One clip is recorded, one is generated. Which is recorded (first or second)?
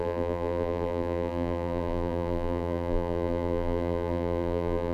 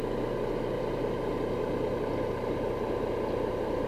second